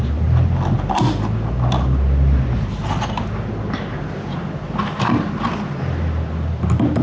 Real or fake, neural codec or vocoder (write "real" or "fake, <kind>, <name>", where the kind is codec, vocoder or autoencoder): real